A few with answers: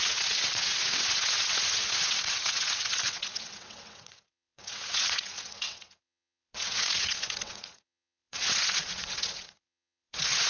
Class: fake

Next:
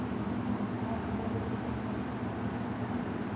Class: real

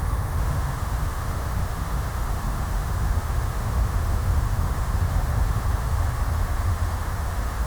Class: fake